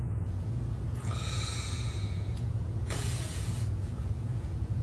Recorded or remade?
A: remade